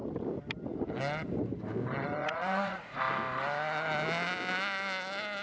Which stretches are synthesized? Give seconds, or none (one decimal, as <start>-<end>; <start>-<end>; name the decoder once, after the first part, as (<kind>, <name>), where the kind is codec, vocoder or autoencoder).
2.2-3.0 (vocoder, Vocos)